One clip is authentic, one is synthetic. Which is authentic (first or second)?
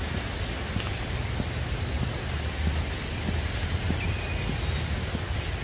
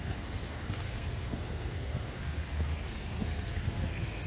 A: first